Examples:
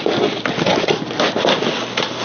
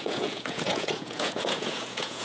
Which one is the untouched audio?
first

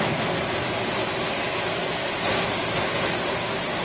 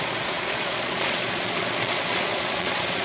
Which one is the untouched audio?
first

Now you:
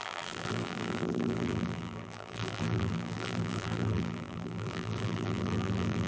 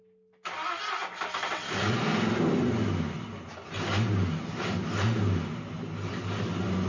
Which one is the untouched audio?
second